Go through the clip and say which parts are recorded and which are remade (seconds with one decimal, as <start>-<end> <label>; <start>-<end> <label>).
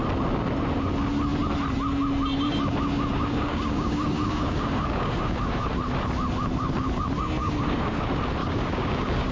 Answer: 0.0-3.1 recorded; 3.1-5.7 remade; 5.7-7.4 recorded; 7.4-8.0 remade; 8.0-8.4 recorded; 8.4-9.3 remade